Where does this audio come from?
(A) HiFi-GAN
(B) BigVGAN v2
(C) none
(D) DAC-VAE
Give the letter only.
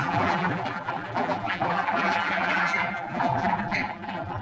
B